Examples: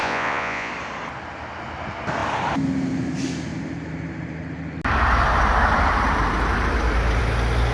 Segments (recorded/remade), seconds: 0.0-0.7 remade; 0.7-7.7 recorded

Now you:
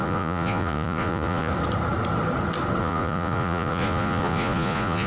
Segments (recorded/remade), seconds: 0.0-1.5 remade; 1.5-2.8 recorded; 2.8-5.1 remade

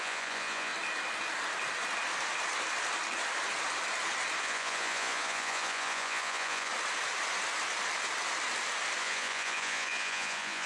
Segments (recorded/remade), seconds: 0.0-0.7 remade; 0.7-4.4 recorded; 4.4-6.7 remade; 6.7-9.0 recorded; 9.0-10.7 remade

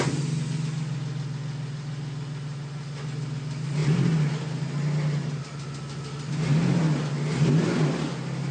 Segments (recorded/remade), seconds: 0.0-8.5 recorded

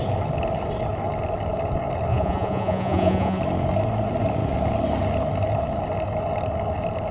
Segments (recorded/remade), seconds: 0.0-2.1 recorded; 2.1-3.4 remade; 3.4-7.1 recorded

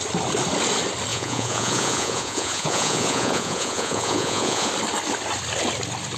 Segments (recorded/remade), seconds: 0.0-1.1 recorded; 1.1-4.7 remade; 4.7-6.2 recorded

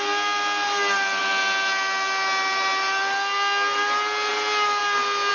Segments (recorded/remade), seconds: 0.0-5.3 recorded

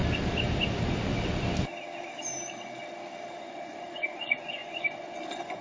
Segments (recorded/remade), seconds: 0.0-3.4 recorded; 3.4-5.6 remade